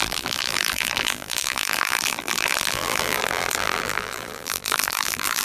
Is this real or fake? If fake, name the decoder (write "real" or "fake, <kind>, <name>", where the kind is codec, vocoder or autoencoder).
fake, vocoder, BigVGAN v2